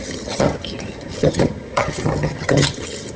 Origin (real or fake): fake